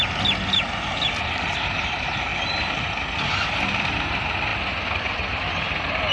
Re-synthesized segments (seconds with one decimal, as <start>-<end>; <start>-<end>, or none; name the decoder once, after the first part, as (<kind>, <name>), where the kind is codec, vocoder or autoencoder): none